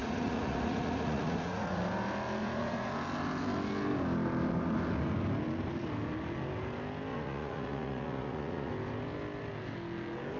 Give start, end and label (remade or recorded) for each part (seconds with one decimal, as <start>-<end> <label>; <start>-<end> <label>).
0.0-1.8 remade; 1.8-2.4 recorded; 2.4-2.9 remade; 2.9-7.1 recorded; 7.1-8.7 remade; 8.7-10.4 recorded